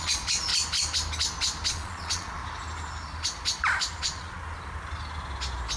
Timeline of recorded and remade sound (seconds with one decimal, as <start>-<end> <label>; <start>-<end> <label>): 0.0-0.5 remade; 0.5-1.7 recorded; 1.7-2.4 remade; 2.4-4.0 recorded; 4.0-4.4 remade; 4.4-5.8 recorded